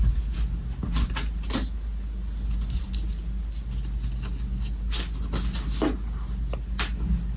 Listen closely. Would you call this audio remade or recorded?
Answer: recorded